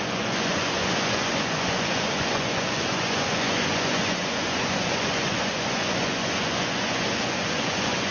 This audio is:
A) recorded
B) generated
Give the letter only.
B